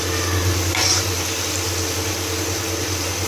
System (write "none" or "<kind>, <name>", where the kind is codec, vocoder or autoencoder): none